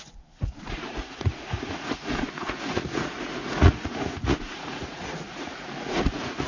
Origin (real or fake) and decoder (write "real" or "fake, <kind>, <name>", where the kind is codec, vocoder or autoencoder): fake, vocoder, Vocos